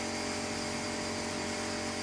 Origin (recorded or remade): recorded